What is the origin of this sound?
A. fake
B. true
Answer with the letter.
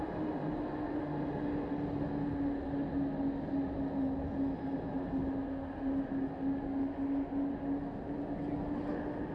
B